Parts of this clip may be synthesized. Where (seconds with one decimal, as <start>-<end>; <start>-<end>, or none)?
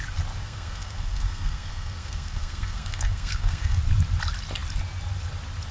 0.4-3.8